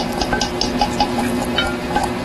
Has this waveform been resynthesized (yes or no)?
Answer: no